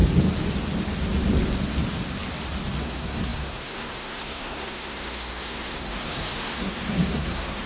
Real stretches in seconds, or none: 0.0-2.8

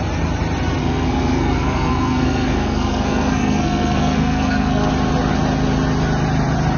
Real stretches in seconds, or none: 0.0-0.8; 4.9-6.8

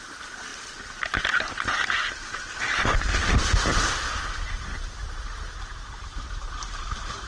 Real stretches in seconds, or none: 0.0-7.3

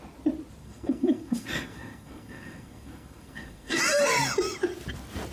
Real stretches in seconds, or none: 0.0-0.6; 3.8-5.3

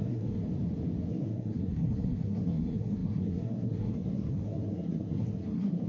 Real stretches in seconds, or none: 0.4-1.1

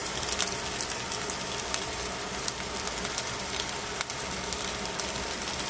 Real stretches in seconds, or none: 0.0-5.7

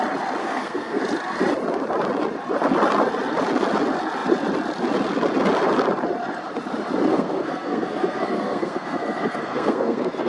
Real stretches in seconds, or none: 0.0-0.4; 1.0-7.1